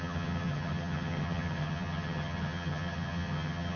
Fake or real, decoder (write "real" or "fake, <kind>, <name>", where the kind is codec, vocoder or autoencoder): fake, vocoder, HiFi-GAN